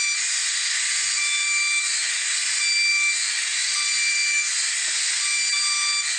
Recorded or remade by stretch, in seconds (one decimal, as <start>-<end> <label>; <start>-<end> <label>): 0.0-6.2 recorded